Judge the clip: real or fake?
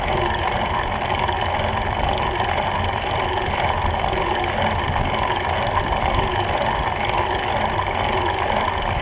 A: real